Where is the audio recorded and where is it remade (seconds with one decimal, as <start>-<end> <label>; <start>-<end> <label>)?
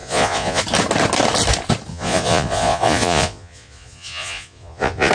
0.0-0.6 remade; 0.6-1.9 recorded; 1.9-5.1 remade